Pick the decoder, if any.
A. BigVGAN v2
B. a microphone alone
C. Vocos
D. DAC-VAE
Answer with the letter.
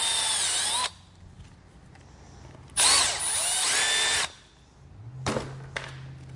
B